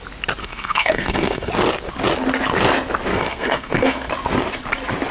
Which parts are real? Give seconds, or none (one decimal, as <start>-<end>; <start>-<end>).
0.0-0.4; 1.5-3.1; 4.1-5.1